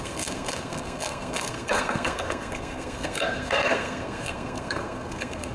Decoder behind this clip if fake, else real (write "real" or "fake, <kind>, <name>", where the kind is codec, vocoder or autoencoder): fake, codec, SNAC